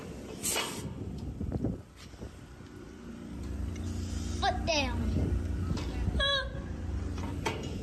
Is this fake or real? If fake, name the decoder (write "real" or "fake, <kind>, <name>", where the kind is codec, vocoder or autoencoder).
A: real